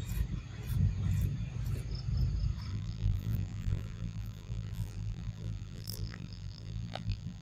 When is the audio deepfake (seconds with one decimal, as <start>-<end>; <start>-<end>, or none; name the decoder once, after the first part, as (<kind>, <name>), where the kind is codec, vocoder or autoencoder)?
2.7-7.4 (vocoder, BigVGAN v2)